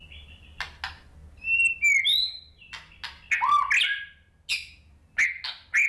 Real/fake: real